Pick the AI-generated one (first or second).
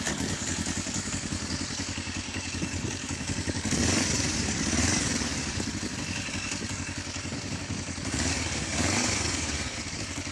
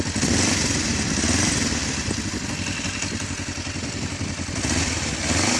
first